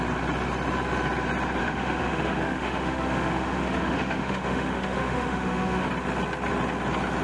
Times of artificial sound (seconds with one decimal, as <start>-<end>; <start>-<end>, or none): 1.6-5.9